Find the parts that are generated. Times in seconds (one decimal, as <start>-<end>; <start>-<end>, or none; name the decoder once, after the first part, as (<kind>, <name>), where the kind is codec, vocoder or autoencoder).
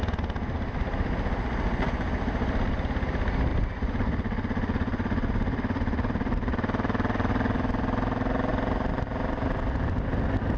3.5-7.3 (vocoder, BigVGAN v2)